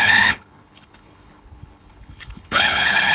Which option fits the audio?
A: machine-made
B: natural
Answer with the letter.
A